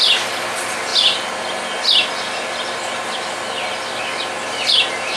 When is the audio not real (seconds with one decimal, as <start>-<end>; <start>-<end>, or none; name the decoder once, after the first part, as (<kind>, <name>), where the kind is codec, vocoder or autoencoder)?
none